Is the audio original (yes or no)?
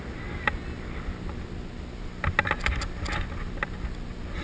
yes